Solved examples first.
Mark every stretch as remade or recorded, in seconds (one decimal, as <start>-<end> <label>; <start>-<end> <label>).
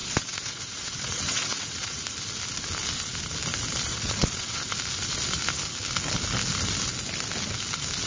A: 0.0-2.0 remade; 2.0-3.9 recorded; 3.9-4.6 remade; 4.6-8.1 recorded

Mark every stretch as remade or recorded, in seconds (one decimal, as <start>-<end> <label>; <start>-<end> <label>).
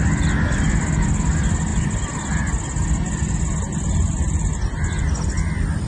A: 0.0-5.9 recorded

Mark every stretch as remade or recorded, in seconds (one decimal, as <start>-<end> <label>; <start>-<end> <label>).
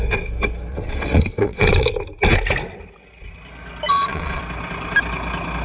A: 0.0-0.7 recorded; 0.7-1.9 remade; 1.9-3.9 recorded; 3.9-4.4 remade; 4.4-5.6 recorded